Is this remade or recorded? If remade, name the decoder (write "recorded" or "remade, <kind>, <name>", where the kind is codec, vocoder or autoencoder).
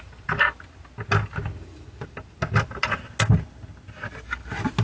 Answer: recorded